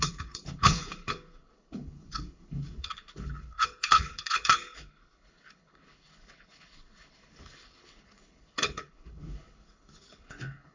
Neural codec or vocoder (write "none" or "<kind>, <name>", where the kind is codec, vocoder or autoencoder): codec, HILCodec